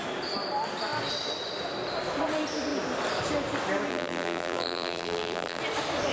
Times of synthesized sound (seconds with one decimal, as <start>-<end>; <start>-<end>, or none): 3.9-5.6